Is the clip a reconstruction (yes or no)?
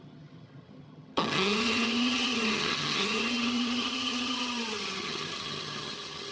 yes